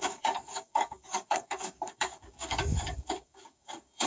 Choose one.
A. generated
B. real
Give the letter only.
A